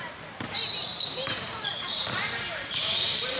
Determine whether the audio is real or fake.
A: fake